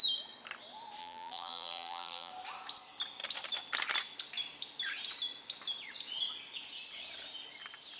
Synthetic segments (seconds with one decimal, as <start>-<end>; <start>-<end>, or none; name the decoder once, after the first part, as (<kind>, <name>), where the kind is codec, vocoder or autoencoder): 1.0-2.3 (vocoder, BigVGAN v2)